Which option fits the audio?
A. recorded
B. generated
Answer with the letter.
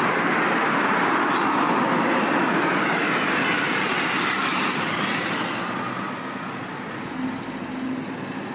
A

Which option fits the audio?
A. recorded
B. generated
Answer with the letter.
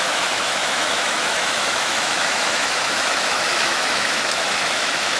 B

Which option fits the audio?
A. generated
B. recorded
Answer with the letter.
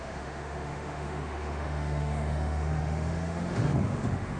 A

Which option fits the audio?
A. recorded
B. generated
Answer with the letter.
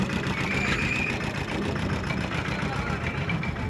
B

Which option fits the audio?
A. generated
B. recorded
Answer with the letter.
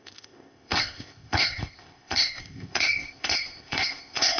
A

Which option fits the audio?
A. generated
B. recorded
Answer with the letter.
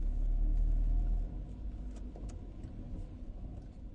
B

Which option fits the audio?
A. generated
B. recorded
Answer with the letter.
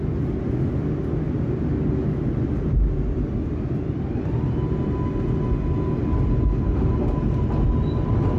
B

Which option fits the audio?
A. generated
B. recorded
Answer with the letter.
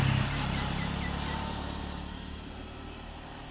B